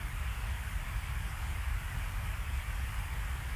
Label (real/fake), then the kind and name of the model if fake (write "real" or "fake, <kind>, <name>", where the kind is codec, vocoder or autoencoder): fake, codec, DAC